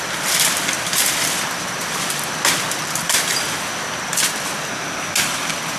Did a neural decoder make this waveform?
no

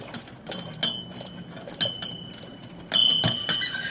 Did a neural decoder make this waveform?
no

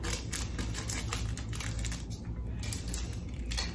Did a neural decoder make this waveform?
no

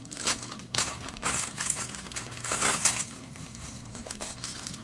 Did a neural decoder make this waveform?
yes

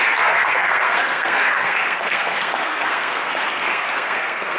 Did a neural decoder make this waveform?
yes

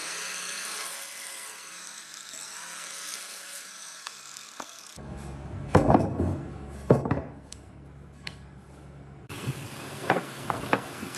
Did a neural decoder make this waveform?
yes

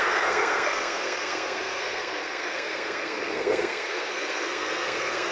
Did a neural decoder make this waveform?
yes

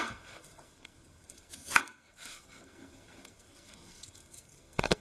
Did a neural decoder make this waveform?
yes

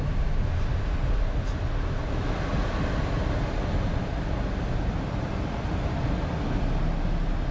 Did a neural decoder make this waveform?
no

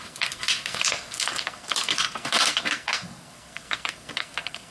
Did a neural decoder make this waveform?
yes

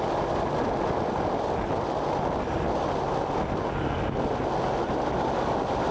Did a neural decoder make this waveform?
no